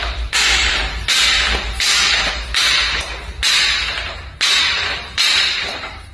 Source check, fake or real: fake